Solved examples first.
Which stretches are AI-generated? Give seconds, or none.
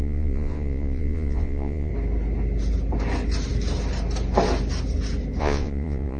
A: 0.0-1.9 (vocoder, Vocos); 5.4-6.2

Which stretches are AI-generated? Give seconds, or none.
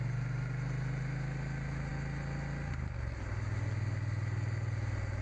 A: none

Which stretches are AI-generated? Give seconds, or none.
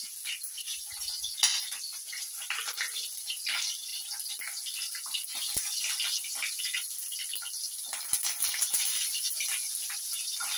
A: none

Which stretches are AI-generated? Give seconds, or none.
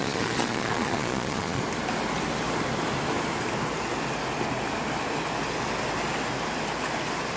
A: 0.0-1.6 (vocoder, Vocos)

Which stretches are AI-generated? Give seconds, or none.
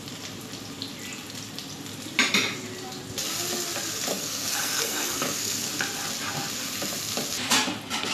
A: 4.1-5.7 (codec, SNAC)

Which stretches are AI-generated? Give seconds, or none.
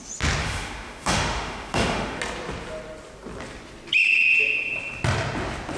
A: 0.4-2.2 (autoencoder, DAC-VAE)